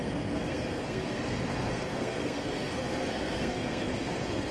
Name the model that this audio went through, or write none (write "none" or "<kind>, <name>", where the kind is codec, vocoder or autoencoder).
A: codec, SNAC